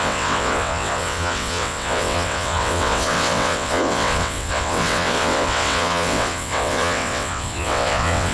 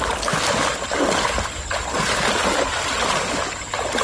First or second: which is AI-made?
first